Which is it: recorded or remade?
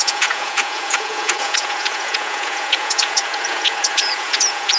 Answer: remade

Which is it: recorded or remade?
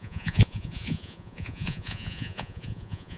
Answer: remade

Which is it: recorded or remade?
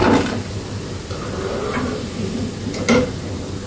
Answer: recorded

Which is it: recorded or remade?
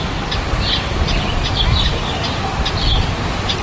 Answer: recorded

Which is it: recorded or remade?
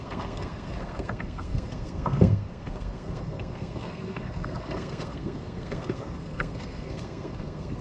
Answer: remade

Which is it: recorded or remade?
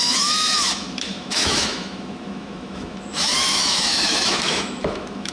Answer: remade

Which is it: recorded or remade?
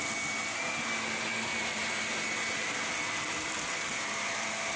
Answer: recorded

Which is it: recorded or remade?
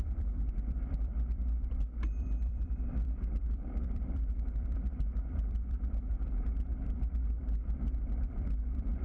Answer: remade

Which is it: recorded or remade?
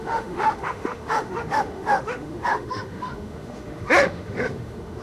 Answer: remade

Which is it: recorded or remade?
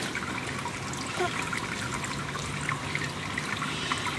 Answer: recorded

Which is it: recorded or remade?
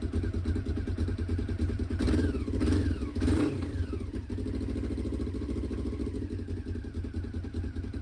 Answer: recorded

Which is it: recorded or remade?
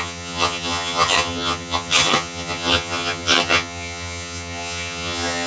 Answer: remade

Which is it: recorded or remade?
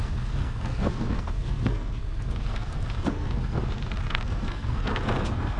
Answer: remade